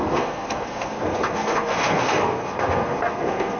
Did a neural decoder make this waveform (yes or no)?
yes